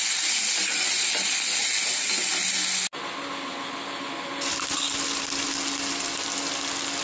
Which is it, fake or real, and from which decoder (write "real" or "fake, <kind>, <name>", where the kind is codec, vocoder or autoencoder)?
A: real